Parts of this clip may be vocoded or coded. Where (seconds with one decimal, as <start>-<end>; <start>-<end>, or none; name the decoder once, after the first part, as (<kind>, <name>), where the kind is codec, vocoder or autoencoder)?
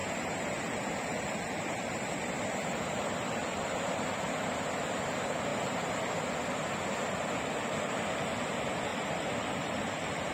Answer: 0.0-3.0 (vocoder, BigVGAN v2); 8.9-10.3